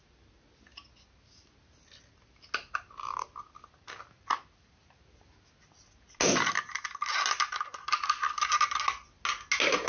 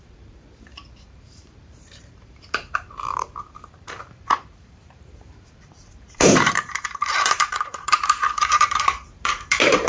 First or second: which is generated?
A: second